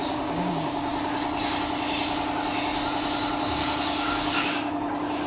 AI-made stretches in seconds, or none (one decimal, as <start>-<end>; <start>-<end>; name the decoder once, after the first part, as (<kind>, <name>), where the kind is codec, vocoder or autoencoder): 0.0-0.9 (codec, DAC); 3.4-5.3